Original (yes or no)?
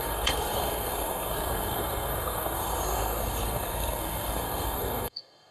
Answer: no